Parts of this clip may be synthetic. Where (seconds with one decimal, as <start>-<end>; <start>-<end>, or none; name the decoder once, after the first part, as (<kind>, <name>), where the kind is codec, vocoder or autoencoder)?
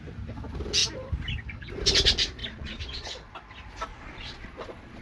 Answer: 2.4-3.3 (vocoder, Vocos); 3.9-5.0